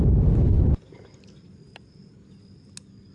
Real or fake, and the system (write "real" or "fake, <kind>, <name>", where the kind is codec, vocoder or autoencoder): real